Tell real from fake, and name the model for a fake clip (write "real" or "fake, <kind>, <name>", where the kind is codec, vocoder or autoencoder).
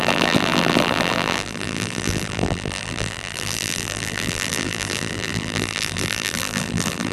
fake, vocoder, BigVGAN v2